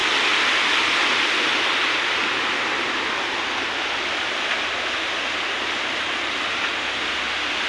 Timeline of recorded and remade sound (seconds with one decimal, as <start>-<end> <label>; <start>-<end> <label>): 0.0-7.7 recorded